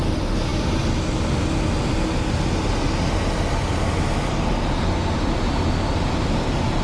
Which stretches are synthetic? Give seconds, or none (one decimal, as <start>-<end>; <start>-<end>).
none